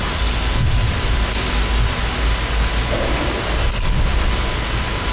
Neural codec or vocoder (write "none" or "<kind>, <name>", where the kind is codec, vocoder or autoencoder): none